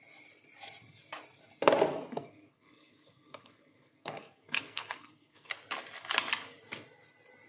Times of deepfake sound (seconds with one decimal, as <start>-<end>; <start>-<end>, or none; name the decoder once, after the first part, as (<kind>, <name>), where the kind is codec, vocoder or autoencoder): 1.9-5.5 (codec, SNAC)